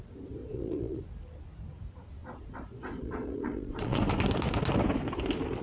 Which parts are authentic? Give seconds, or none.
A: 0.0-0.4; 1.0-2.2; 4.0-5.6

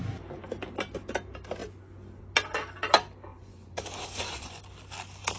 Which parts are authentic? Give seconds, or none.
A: 0.0-3.3; 4.6-5.4

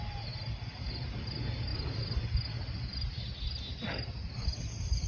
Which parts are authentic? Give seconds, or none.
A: 0.0-5.1

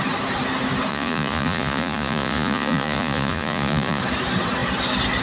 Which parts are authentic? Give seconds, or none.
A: 0.0-0.9; 4.0-5.2

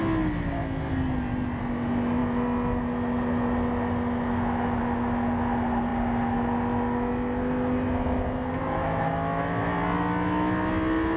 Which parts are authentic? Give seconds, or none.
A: 0.0-11.2

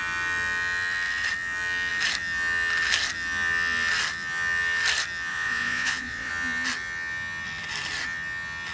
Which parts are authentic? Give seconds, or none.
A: 0.0-5.3; 6.3-8.7

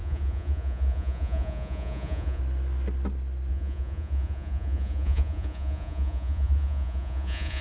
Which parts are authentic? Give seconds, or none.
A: 2.4-3.5